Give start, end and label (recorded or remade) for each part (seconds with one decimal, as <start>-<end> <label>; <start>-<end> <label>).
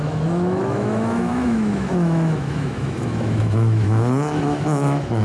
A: 0.0-5.2 remade